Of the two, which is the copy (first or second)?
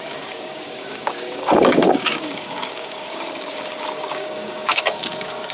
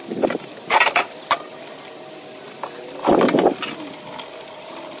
first